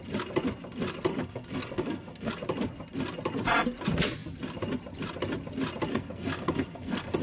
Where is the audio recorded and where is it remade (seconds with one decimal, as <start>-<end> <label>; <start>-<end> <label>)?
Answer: 0.0-1.1 recorded; 1.1-2.3 remade; 2.3-5.9 recorded; 5.9-7.2 remade

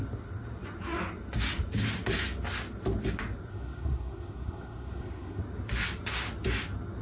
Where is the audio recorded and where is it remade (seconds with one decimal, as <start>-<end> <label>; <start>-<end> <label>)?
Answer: 0.0-3.5 recorded; 3.5-5.4 remade; 5.4-7.0 recorded

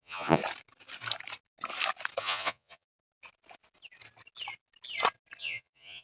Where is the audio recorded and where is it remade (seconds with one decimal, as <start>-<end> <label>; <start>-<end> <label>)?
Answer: 0.0-0.4 remade; 0.4-2.2 recorded; 2.2-2.9 remade; 2.9-5.4 recorded; 5.4-6.0 remade

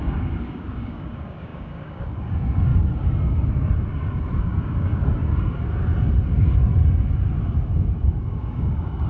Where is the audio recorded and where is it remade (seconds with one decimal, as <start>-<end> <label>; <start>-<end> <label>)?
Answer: 0.0-2.7 remade; 2.7-4.4 recorded; 4.4-5.0 remade; 5.0-8.2 recorded; 8.2-9.1 remade

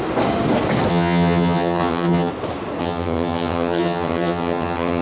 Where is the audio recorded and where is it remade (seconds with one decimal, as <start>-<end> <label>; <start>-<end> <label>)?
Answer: 0.0-0.9 recorded; 0.9-2.3 remade; 2.3-2.8 recorded; 2.8-5.0 remade